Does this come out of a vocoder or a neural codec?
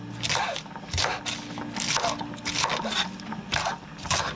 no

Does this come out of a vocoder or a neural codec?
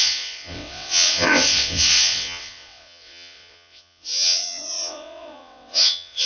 yes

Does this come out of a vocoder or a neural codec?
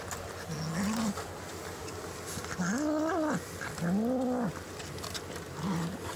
no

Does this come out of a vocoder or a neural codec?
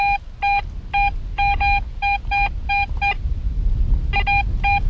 no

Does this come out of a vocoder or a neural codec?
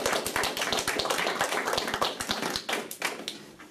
no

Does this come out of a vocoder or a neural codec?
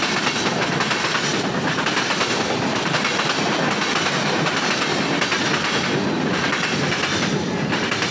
no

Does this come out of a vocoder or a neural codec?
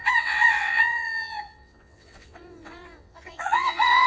yes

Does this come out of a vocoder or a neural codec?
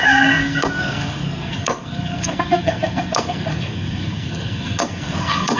yes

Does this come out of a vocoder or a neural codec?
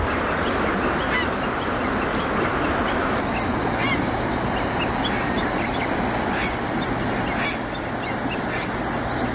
no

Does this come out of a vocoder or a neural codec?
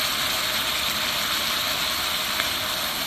no